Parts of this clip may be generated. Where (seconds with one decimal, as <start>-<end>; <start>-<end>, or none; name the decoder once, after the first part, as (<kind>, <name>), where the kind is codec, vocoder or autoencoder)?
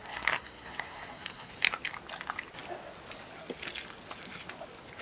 0.0-1.5 (codec, SNAC)